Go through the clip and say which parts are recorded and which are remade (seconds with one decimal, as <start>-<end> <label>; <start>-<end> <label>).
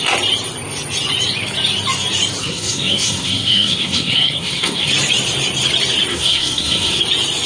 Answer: 0.0-2.4 recorded; 2.4-4.9 remade; 4.9-6.1 recorded; 6.1-7.0 remade; 7.0-7.5 recorded